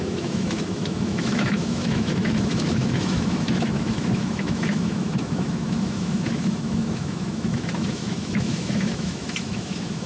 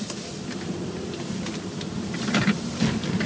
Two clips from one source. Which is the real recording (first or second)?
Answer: second